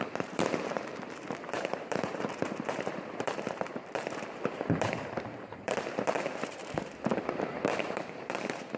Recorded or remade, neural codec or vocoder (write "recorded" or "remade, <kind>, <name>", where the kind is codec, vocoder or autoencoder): remade, vocoder, BigVGAN v2